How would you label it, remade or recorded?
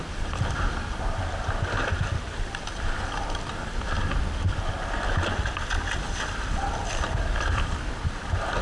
recorded